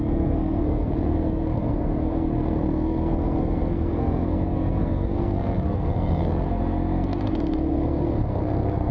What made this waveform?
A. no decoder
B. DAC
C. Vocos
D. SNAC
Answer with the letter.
D